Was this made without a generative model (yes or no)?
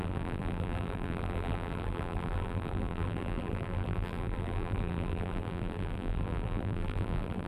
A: no